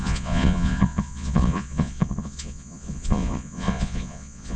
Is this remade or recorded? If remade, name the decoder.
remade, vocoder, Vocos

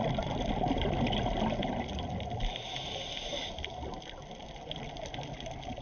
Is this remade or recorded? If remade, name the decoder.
recorded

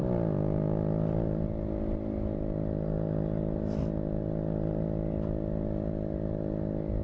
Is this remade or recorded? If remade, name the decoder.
recorded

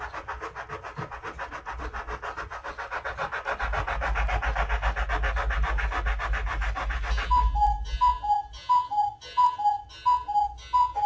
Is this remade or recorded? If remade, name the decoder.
recorded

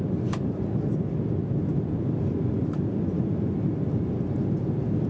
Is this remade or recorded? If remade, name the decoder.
recorded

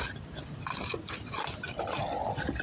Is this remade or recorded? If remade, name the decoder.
recorded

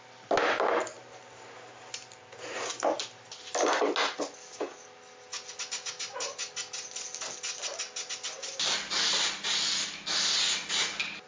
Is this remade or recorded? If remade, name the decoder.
recorded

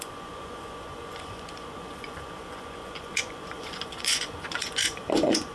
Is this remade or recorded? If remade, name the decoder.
remade, vocoder, Vocos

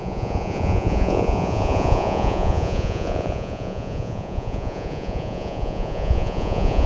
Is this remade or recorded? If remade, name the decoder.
remade, vocoder, Vocos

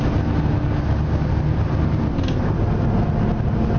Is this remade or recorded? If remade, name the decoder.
recorded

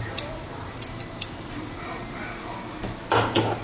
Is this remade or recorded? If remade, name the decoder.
recorded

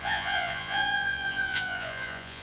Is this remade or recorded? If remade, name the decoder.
remade, vocoder, Vocos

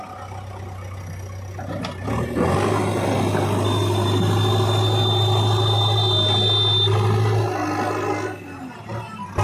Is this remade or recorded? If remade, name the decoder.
recorded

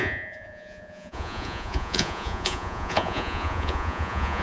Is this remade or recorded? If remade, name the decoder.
remade, vocoder, Vocos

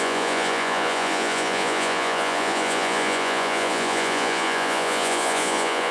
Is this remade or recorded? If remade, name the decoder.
remade, vocoder, Vocos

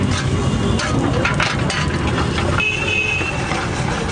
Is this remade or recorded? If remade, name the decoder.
recorded